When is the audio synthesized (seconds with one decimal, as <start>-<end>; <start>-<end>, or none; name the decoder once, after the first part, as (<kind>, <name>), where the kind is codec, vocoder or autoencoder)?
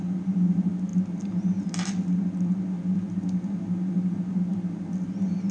none